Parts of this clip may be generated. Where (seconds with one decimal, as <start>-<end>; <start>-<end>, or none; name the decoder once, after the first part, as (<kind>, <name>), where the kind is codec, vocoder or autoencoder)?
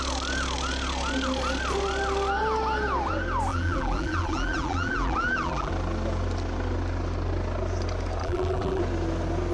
3.5-5.7 (vocoder, BigVGAN v2); 8.2-8.8